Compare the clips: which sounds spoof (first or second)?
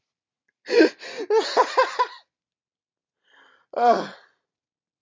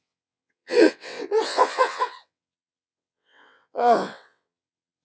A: second